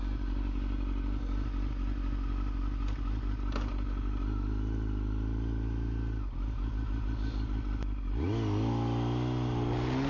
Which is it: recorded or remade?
recorded